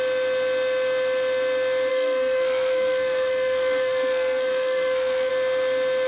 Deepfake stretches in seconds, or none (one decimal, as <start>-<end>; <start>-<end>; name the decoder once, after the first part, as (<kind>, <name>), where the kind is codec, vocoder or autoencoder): 1.9-5.3 (codec, SNAC)